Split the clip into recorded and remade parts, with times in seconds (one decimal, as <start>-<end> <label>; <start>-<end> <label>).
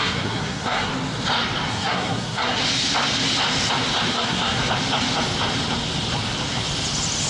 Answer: 0.0-0.9 remade; 0.9-1.7 recorded; 1.7-2.6 remade; 2.6-4.1 recorded; 4.1-4.6 remade; 4.6-7.3 recorded